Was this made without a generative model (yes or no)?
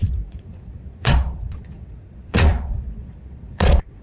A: no